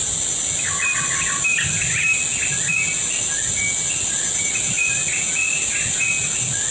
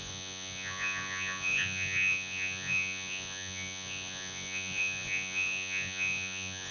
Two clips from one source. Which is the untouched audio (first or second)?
first